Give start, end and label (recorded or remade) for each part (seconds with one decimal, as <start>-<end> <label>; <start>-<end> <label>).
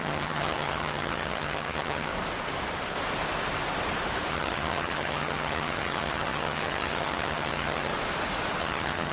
0.0-2.1 remade; 2.1-4.3 recorded; 4.3-7.9 remade; 7.9-8.6 recorded; 8.6-9.1 remade